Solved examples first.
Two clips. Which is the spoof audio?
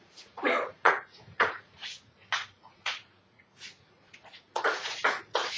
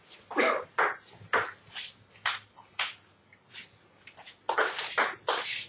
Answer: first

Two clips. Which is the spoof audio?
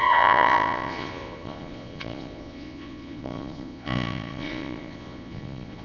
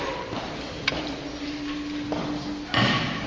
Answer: first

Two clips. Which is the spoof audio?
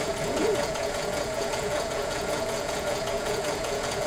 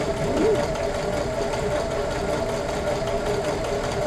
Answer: first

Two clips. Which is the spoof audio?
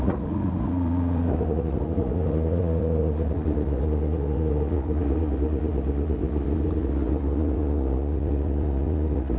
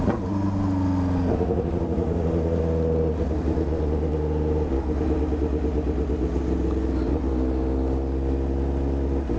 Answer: first